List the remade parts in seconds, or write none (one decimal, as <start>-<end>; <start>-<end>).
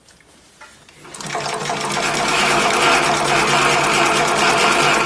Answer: 2.3-2.8